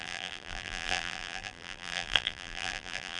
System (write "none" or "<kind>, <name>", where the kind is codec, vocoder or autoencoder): vocoder, BigVGAN v2